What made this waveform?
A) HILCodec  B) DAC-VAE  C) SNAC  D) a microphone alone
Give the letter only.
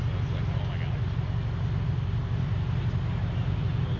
D